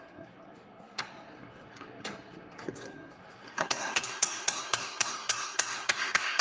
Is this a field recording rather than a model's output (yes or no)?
no